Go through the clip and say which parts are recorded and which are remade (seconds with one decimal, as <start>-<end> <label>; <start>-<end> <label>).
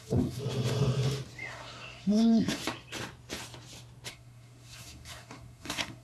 0.0-0.4 remade; 0.4-1.5 recorded; 1.5-2.6 remade; 2.6-4.1 recorded; 4.1-6.0 remade